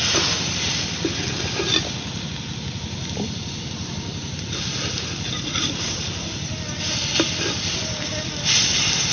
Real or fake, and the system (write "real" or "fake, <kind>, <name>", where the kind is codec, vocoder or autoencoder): real